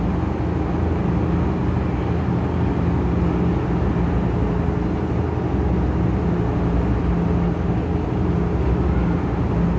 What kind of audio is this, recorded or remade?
recorded